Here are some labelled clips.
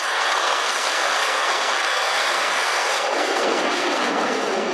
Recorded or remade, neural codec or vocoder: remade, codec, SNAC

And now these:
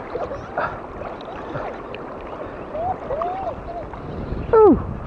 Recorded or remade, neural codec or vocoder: recorded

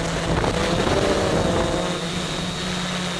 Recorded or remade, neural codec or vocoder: recorded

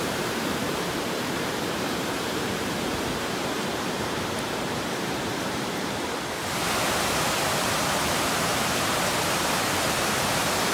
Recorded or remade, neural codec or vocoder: remade, vocoder, BigVGAN v2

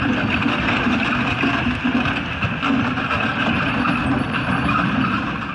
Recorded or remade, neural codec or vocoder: recorded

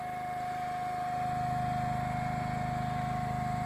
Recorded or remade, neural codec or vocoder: recorded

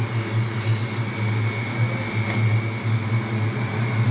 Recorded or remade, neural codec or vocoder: recorded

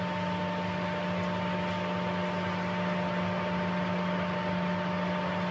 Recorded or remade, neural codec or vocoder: recorded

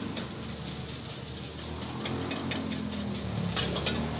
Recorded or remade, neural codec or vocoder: recorded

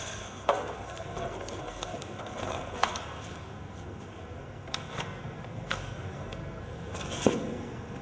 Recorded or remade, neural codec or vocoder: remade, codec, SNAC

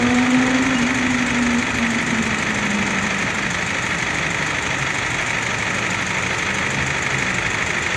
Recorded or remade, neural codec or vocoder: recorded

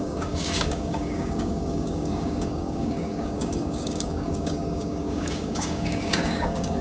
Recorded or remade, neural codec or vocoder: remade, codec, DAC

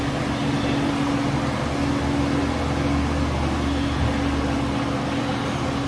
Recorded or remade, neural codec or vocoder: recorded